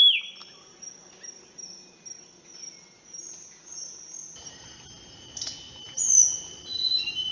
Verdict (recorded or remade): recorded